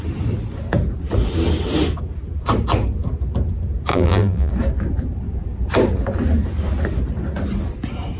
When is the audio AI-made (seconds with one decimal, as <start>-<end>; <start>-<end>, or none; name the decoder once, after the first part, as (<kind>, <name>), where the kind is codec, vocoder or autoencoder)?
3.9-4.5 (vocoder, BigVGAN v2)